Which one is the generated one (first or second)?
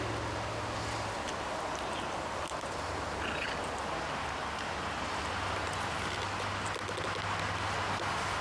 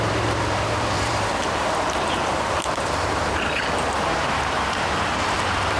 second